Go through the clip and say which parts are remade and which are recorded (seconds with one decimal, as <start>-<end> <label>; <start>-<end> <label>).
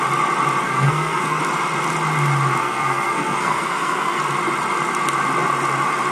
0.0-0.6 recorded; 0.6-1.4 remade; 1.4-2.6 recorded; 2.6-4.2 remade; 4.2-6.1 recorded